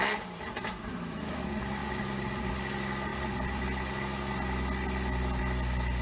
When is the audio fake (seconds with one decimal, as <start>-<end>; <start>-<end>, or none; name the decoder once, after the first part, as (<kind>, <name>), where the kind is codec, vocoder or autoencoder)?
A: 0.9-1.4 (autoencoder, DAC-VAE)